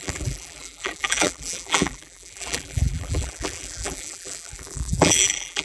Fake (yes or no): yes